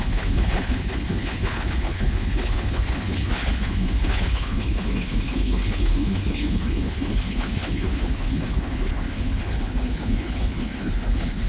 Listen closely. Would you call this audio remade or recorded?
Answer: remade